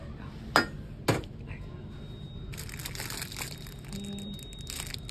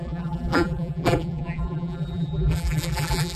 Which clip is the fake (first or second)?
second